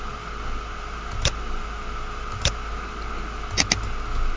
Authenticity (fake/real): real